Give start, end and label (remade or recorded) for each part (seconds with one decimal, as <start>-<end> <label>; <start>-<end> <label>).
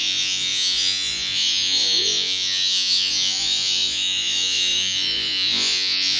0.0-6.2 remade